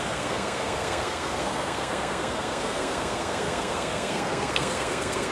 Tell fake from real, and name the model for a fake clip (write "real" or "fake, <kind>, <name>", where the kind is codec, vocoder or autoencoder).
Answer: fake, codec, SNAC